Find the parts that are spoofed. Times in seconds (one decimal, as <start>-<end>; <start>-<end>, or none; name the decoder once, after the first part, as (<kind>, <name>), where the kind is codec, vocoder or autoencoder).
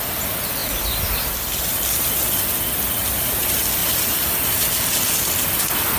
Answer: none